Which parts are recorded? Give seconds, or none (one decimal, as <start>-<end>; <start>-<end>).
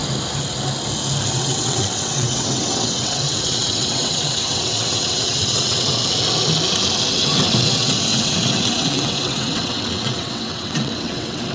0.0-1.3; 6.0-7.1